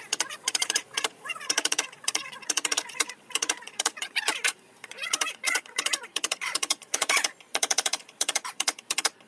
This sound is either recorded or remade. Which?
remade